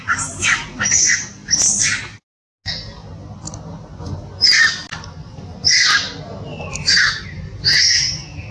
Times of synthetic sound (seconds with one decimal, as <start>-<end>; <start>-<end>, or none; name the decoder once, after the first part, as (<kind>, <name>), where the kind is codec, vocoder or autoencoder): none